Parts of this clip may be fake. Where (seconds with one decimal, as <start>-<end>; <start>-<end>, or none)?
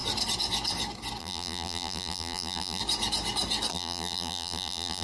1.2-2.8; 3.7-5.0